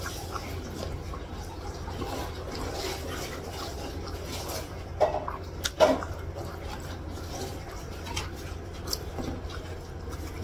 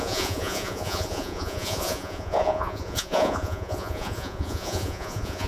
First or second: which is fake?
second